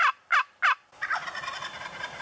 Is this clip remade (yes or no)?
no